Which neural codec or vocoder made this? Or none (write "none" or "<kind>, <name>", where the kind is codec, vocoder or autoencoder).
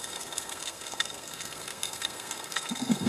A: codec, SNAC